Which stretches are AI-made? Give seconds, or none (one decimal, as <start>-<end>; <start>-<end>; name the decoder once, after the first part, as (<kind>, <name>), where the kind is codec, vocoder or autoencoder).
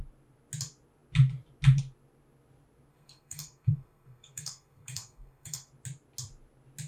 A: 2.9-5.7 (codec, SNAC)